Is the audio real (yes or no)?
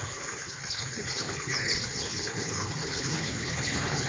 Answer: no